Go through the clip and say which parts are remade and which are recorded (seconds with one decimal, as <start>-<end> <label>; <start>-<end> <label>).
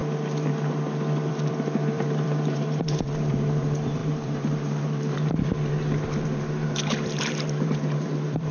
0.0-1.3 recorded; 1.3-8.5 remade